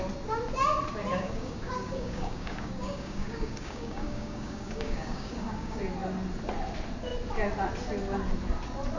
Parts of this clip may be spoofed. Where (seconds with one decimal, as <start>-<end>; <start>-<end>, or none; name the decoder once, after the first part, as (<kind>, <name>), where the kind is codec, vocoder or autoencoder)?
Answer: 1.1-5.8 (codec, DAC)

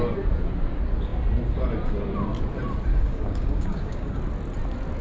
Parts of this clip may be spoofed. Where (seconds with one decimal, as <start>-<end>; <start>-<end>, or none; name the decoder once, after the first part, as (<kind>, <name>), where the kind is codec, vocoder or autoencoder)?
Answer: 2.9-4.2 (codec, DAC)

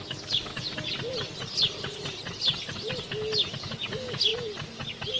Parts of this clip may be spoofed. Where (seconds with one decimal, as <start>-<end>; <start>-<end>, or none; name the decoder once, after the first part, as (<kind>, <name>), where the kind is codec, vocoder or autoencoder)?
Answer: 0.0-0.5 (codec, DAC); 3.6-4.3

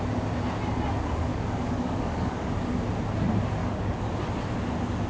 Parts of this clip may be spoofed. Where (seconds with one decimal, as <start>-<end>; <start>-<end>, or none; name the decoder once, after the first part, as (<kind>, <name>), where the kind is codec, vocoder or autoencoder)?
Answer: 1.3-2.5 (codec, DAC); 3.6-4.1

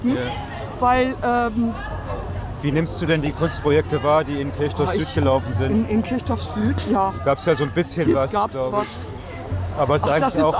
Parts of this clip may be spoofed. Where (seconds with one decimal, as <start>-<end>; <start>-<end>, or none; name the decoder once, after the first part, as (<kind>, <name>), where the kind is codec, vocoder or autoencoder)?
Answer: 2.9-3.6 (codec, DAC); 6.6-7.1; 8.7-10.6

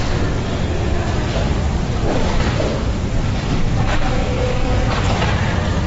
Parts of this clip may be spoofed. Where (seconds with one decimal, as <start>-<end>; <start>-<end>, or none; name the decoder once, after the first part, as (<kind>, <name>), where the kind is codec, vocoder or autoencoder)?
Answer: 4.2-5.0 (codec, DAC)